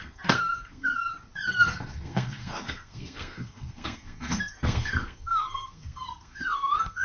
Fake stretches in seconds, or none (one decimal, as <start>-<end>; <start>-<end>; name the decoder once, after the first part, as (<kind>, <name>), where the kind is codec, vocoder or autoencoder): 0.0-0.9 (codec, SNAC); 1.5-7.0